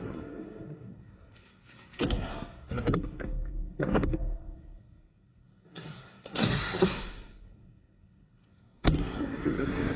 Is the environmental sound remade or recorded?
remade